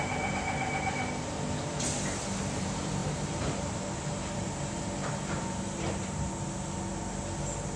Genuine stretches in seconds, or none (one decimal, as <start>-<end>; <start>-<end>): 0.0-3.0; 6.3-7.8